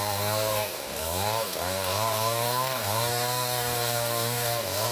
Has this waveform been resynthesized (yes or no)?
yes